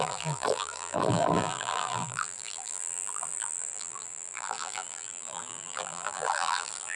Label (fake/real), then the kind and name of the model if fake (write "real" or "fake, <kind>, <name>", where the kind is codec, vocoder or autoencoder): fake, vocoder, BigVGAN v2